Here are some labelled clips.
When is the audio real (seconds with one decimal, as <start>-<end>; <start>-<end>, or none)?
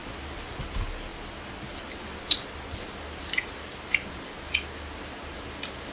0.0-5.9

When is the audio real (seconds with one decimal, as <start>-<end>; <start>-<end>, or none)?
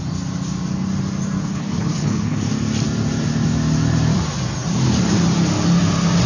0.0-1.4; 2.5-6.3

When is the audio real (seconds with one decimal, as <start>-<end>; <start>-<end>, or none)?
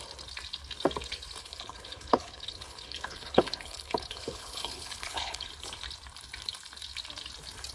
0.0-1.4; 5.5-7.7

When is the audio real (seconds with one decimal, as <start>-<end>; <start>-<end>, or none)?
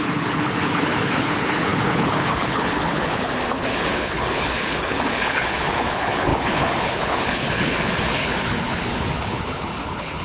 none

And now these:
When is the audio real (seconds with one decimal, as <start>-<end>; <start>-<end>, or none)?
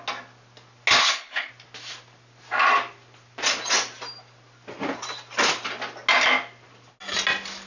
0.0-1.0; 1.5-7.7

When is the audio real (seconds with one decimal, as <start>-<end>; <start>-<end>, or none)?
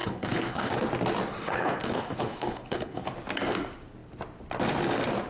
0.7-1.4; 3.1-5.3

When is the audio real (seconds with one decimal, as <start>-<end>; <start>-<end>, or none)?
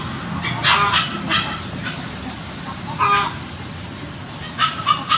0.0-5.2